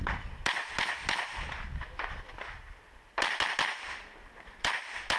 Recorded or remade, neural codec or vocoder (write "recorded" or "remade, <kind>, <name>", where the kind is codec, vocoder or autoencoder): recorded